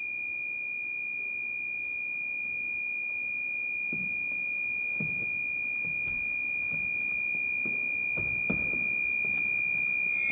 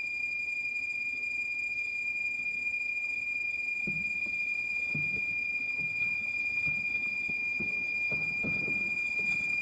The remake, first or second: second